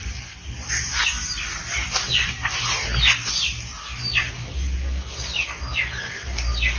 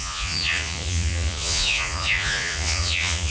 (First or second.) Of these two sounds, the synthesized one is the second